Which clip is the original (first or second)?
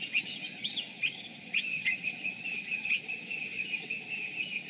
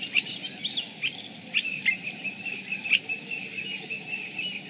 second